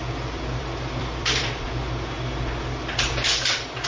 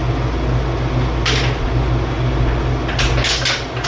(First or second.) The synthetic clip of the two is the first